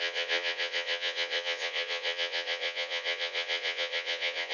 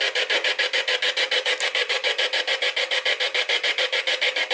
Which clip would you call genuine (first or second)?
second